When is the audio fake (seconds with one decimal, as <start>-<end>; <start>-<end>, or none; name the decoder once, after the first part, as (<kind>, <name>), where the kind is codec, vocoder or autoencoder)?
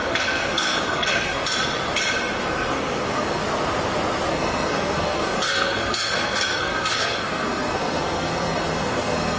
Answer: 0.0-1.4 (codec, SNAC); 2.4-3.4; 4.3-9.4